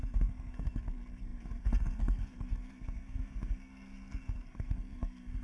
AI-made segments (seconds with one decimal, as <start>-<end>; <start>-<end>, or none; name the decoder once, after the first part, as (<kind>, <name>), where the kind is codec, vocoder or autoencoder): 0.0-5.4 (codec, SNAC)